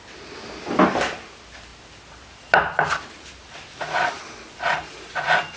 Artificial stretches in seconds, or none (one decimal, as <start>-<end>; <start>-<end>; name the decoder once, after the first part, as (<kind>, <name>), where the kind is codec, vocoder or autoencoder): none